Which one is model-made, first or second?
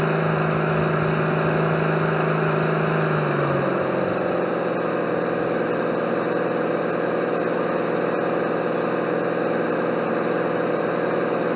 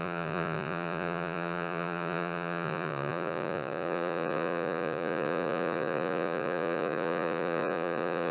second